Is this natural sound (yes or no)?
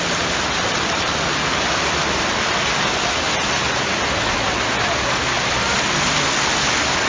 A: yes